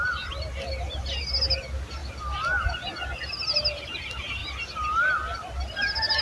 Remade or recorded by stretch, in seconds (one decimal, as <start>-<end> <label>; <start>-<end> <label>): 0.0-6.2 recorded